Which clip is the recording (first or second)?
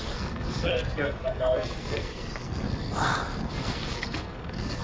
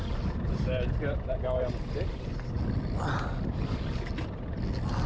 second